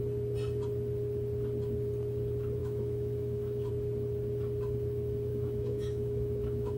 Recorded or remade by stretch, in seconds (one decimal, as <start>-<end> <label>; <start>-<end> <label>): 0.0-2.6 recorded; 2.6-3.7 remade; 3.7-5.3 recorded; 5.3-6.8 remade